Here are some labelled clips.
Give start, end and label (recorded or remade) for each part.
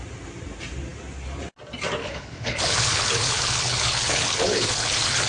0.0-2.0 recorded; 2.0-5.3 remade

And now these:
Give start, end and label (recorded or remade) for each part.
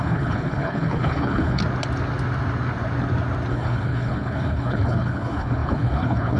0.0-1.6 remade; 1.6-3.5 recorded; 3.5-6.4 remade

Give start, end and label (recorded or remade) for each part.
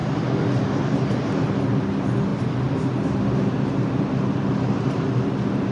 0.0-5.7 recorded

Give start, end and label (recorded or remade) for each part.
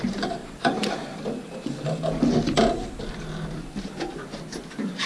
0.0-5.1 recorded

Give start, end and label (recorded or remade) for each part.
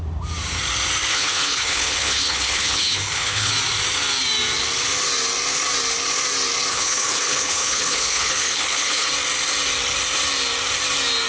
0.0-1.1 recorded; 1.1-3.5 remade; 3.5-6.7 recorded; 6.7-9.1 remade; 9.1-11.3 recorded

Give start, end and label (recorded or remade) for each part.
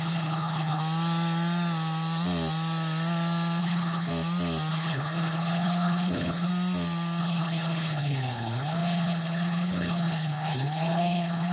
0.0-0.8 remade; 0.8-3.6 recorded; 3.6-4.1 remade; 4.1-4.7 recorded; 4.7-6.5 remade; 6.5-7.2 recorded; 7.2-11.5 remade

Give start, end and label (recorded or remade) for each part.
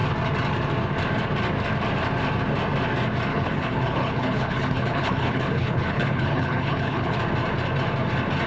0.0-3.3 recorded; 3.3-7.2 remade; 7.2-8.5 recorded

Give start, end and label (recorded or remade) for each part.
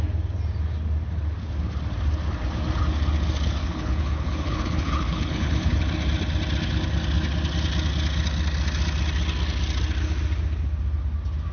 0.0-3.6 recorded; 3.6-5.8 remade; 5.8-11.5 recorded